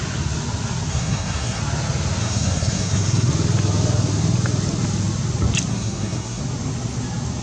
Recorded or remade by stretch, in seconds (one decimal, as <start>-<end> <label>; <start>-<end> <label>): 0.0-0.9 recorded; 0.9-1.6 remade; 1.6-2.2 recorded; 2.2-3.3 remade; 3.3-5.7 recorded; 5.7-6.4 remade; 6.4-7.4 recorded